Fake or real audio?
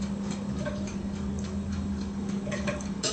fake